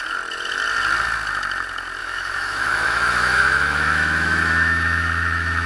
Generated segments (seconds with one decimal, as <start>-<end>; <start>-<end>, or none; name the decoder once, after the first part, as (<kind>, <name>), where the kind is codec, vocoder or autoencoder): 2.0-5.7 (autoencoder, DAC-VAE)